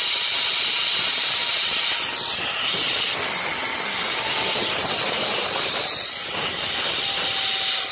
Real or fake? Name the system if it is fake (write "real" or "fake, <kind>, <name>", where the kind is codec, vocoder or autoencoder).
real